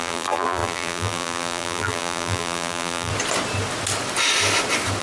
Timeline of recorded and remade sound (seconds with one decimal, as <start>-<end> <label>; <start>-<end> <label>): 0.0-3.1 remade; 3.1-5.0 recorded